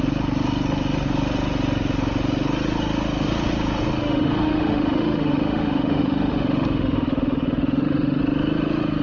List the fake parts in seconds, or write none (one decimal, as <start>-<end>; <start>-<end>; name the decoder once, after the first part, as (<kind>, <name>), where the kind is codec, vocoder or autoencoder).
4.0-8.2 (autoencoder, DAC-VAE)